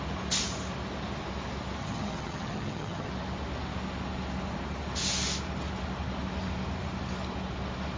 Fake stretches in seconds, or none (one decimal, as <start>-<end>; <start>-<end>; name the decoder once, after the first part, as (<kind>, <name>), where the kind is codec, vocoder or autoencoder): 1.8-3.1 (vocoder, HiFi-GAN)